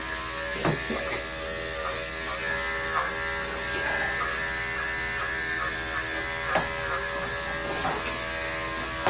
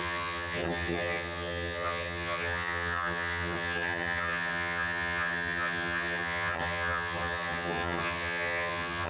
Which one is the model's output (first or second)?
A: second